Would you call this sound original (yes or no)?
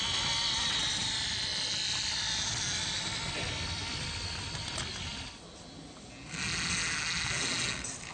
yes